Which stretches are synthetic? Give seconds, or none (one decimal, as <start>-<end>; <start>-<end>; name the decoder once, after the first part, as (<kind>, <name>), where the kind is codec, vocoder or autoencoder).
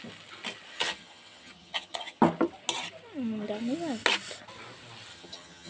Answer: 0.7-2.2 (vocoder, HiFi-GAN); 5.1-5.7